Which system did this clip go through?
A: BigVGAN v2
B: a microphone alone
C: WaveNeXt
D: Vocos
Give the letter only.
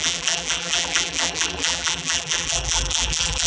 A